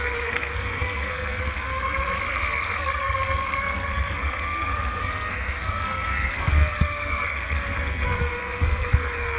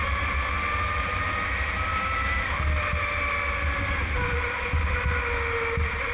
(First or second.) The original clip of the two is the second